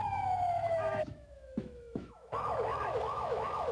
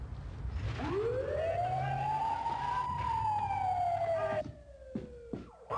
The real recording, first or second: second